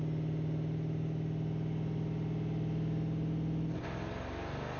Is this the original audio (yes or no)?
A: yes